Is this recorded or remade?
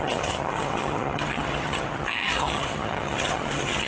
remade